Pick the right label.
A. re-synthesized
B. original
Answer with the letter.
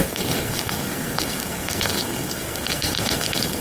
A